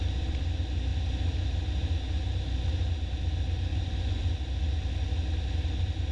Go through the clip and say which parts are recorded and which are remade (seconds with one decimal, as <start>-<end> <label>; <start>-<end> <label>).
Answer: 0.0-3.7 recorded; 3.7-4.3 remade; 4.3-6.1 recorded